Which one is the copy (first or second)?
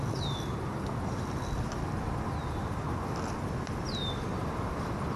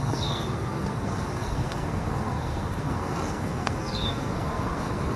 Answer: second